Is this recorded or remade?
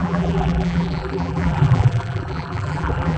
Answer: remade